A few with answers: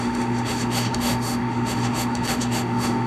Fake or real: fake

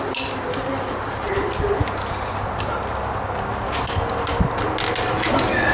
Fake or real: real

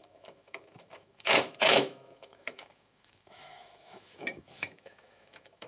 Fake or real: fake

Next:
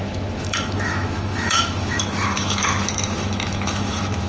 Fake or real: fake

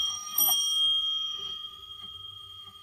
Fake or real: fake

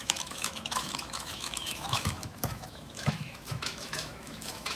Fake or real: fake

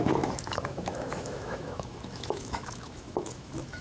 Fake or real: fake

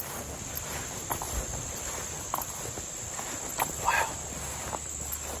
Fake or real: real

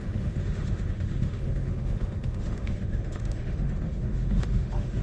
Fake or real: fake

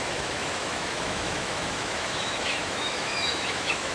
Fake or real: fake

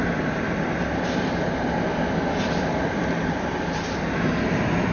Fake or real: real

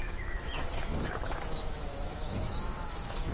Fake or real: fake